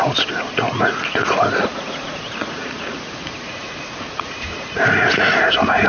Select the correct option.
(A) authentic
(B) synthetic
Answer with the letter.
B